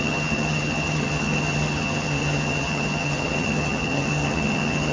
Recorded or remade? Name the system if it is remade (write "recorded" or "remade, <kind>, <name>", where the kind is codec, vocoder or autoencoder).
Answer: remade, vocoder, HiFi-GAN